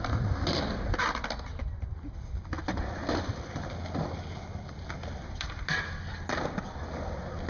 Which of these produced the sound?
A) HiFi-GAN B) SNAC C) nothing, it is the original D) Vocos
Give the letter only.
C